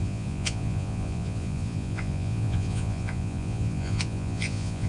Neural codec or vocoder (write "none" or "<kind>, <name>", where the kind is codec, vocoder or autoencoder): vocoder, Vocos